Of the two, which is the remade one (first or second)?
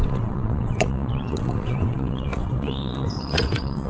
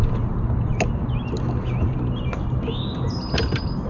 first